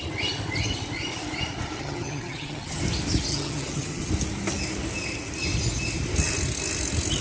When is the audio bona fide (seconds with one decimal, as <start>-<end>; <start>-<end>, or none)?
0.0-1.8; 2.8-3.3; 4.1-7.2